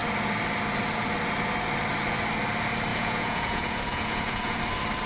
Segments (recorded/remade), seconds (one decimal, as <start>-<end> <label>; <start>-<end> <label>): 0.0-2.9 recorded; 2.9-4.6 remade; 4.6-5.1 recorded